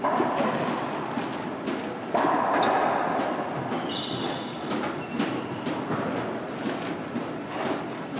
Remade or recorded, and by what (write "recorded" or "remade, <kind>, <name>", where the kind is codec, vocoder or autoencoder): recorded